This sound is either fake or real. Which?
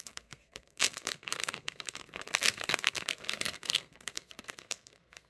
fake